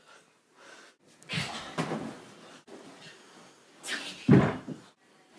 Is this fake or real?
real